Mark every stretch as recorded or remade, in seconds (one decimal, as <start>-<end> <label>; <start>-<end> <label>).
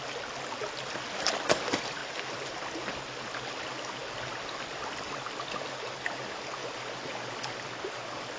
0.0-8.4 recorded